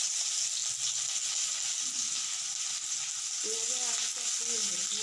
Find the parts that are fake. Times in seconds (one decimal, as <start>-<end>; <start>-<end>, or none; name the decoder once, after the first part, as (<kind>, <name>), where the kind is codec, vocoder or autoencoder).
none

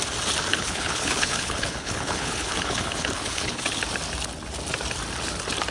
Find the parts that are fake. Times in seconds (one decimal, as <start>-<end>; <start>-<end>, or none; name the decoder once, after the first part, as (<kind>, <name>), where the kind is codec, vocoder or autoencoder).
0.5-3.8 (codec, HILCodec)

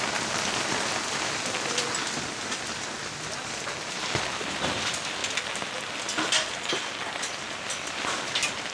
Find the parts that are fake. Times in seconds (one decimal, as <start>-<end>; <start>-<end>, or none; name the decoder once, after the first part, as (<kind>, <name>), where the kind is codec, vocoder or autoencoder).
none